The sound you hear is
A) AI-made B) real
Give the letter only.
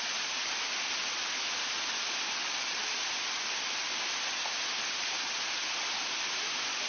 B